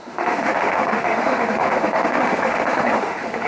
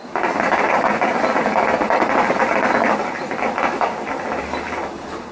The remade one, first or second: first